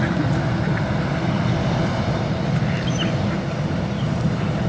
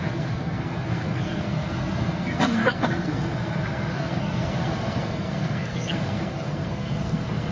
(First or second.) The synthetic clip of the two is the second